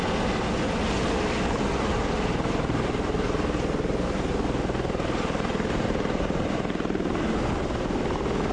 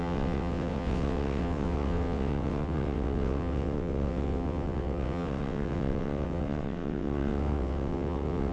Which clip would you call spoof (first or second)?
second